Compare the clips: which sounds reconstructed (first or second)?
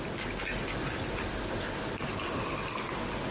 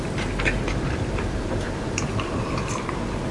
second